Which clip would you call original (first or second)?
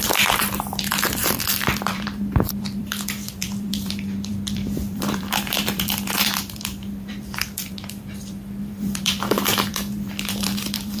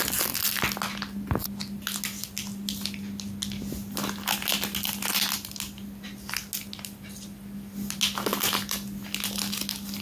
second